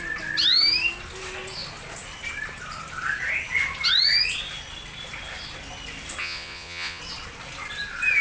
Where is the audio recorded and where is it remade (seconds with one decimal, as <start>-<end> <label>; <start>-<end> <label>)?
0.0-6.2 recorded; 6.2-7.0 remade; 7.0-8.2 recorded